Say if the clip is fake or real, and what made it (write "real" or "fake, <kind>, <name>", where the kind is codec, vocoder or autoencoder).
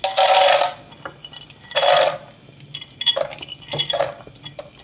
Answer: real